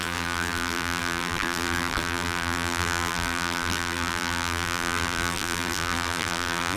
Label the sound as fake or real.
fake